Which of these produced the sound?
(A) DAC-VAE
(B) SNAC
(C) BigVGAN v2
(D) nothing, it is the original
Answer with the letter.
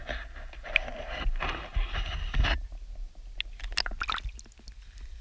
D